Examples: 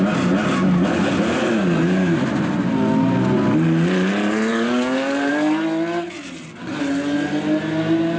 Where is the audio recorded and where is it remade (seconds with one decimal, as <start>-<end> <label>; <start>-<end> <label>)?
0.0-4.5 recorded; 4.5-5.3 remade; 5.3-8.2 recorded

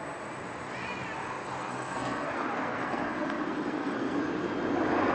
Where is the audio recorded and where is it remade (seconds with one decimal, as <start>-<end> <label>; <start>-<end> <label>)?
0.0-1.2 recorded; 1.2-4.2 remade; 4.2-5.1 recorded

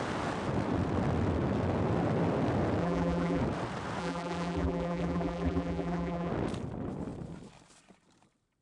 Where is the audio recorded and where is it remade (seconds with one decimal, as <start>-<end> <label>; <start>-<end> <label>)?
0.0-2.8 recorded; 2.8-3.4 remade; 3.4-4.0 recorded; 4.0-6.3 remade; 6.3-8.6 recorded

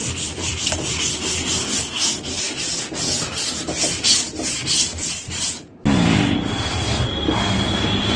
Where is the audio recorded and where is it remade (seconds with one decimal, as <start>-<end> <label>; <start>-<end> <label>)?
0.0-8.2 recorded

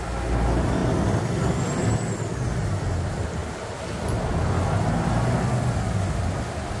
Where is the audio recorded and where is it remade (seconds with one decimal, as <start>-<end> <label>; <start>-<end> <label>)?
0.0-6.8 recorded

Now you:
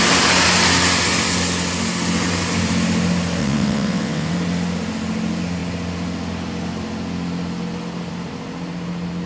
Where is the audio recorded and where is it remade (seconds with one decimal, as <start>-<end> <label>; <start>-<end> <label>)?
0.0-3.4 recorded; 3.4-4.3 remade; 4.3-9.3 recorded

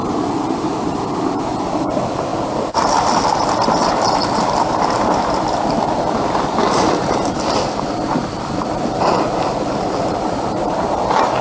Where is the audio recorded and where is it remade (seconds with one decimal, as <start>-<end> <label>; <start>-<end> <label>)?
0.0-2.3 recorded; 2.3-3.2 remade; 3.2-11.4 recorded